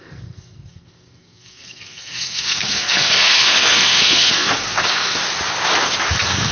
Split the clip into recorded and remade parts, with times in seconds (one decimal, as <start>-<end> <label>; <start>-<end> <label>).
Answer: 0.0-5.2 remade; 5.2-6.1 recorded; 6.1-6.5 remade